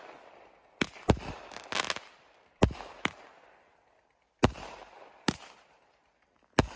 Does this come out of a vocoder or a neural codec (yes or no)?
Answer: no